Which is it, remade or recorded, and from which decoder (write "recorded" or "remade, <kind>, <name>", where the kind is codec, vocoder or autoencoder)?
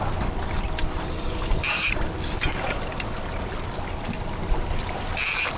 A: remade, vocoder, BigVGAN v2